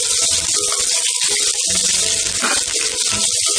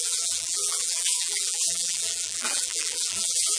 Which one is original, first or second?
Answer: first